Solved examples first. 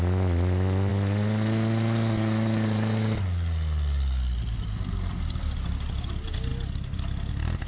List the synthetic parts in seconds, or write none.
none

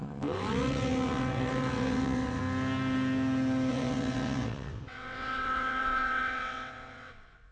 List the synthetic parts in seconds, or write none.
0.0-2.4 (vocoder, WaveNeXt); 3.7-7.5

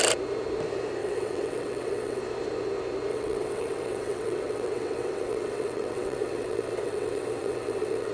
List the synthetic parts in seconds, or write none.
1.0-2.2 (vocoder, WaveNeXt); 3.1-8.1

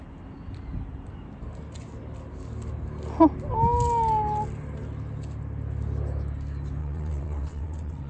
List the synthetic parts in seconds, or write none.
6.8-8.1 (vocoder, WaveNeXt)

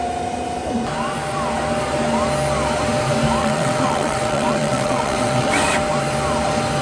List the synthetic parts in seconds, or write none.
3.4-5.5 (vocoder, WaveNeXt)

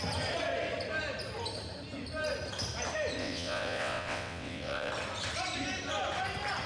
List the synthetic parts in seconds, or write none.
3.2-4.9 (vocoder, WaveNeXt)